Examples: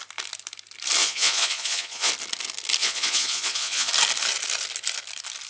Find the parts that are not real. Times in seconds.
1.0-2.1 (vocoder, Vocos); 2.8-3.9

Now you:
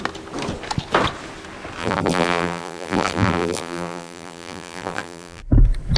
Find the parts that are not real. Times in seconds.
1.8-5.4 (vocoder, BigVGAN v2)

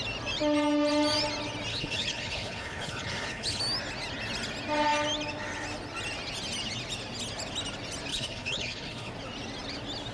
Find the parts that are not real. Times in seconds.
1.7-3.6 (codec, HILCodec); 8.1-9.1

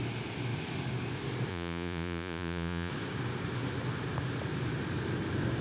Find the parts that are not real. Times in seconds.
1.5-2.9 (vocoder, Vocos)

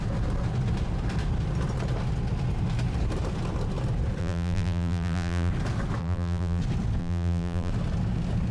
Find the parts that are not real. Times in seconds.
4.2-5.5 (vocoder, BigVGAN v2); 6.0-6.6; 7.0-7.7

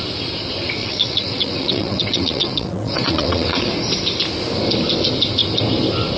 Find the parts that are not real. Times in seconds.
0.8-3.7 (vocoder, WaveNeXt)

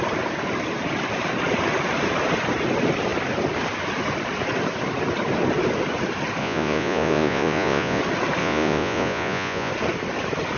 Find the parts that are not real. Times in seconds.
6.4-8.0 (vocoder, Vocos); 8.4-9.7